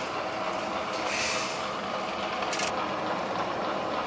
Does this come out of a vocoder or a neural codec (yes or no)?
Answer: no